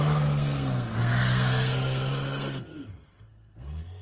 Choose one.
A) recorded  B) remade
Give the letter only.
B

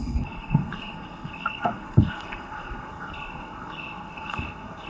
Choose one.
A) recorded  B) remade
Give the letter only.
B